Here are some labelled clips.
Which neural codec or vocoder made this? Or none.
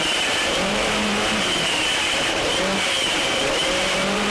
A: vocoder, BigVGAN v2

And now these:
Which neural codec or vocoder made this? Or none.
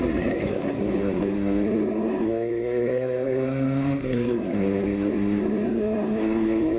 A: codec, SNAC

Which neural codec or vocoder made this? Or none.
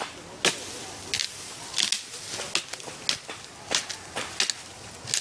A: none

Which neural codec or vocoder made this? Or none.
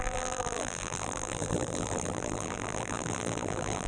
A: vocoder, BigVGAN v2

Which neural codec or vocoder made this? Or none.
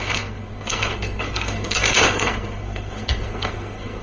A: codec, SNAC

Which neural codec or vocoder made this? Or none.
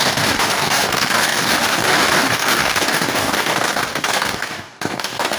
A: codec, DAC